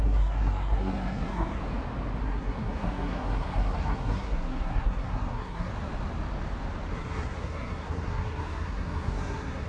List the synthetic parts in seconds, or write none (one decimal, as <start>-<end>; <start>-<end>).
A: 0.0-1.6; 2.2-5.7; 6.9-9.7